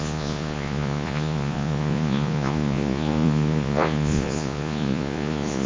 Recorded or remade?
remade